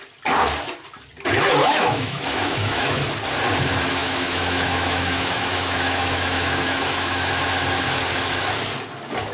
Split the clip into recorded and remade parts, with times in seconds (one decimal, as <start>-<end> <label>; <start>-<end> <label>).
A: 0.0-1.6 recorded; 1.6-3.0 remade; 3.0-4.0 recorded; 4.0-7.3 remade; 7.3-9.3 recorded